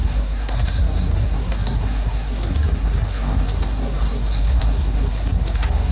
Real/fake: fake